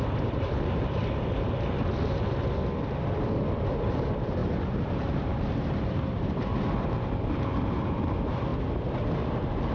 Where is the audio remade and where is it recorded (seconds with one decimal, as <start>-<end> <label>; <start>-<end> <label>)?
0.0-1.0 remade; 1.0-3.7 recorded; 3.7-8.5 remade; 8.5-9.1 recorded; 9.1-9.7 remade